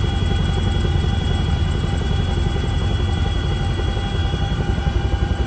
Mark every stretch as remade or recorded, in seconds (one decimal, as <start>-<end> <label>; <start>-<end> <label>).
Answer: 0.0-0.9 recorded; 0.9-3.5 remade; 3.5-4.2 recorded; 4.2-5.5 remade